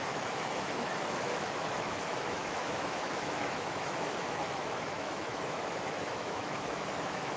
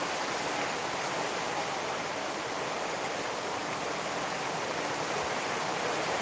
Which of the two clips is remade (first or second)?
first